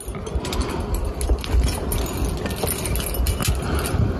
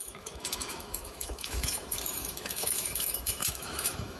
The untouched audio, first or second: first